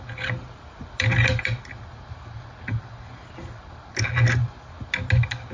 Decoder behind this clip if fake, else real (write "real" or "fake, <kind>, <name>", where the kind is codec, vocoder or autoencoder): real